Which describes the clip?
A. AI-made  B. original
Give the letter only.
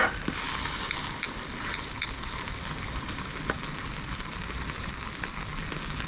B